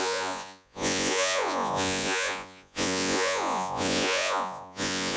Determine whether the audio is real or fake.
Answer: fake